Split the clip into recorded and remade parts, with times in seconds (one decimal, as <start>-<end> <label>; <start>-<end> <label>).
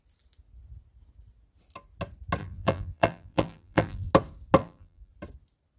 0.0-2.4 recorded; 2.4-4.1 remade; 4.1-4.6 recorded; 4.6-5.1 remade; 5.1-5.8 recorded